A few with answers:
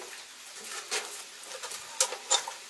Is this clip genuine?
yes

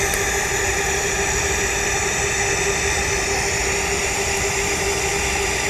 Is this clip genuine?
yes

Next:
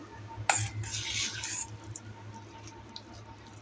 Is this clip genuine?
yes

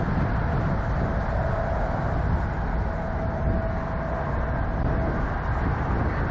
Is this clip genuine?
yes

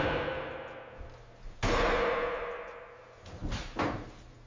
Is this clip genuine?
yes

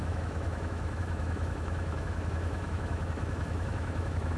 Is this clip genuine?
no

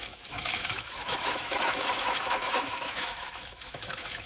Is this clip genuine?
no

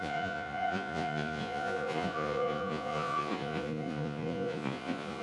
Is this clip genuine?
no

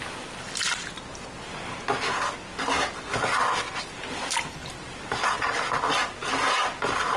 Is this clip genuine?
yes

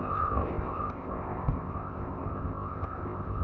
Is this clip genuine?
no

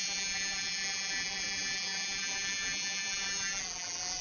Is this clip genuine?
no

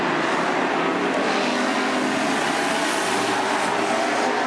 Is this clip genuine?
yes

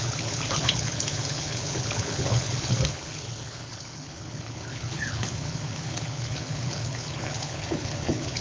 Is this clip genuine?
no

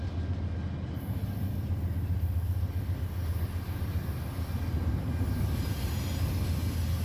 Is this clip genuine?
yes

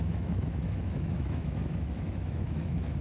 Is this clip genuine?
no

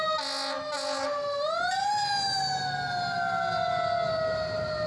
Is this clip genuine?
yes